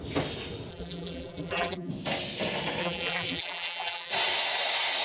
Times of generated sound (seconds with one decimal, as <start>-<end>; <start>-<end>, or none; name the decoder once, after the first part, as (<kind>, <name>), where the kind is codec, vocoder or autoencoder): 0.7-1.9 (vocoder, BigVGAN v2); 2.8-4.1